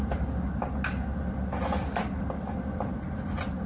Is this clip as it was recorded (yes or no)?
yes